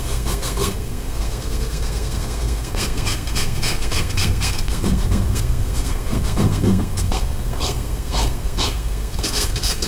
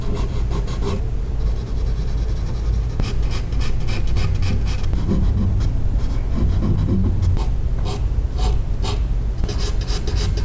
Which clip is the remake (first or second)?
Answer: first